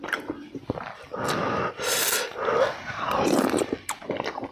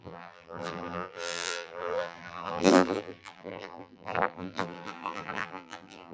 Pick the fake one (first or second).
second